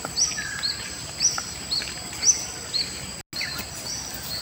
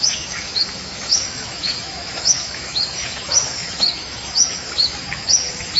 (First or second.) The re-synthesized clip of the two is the second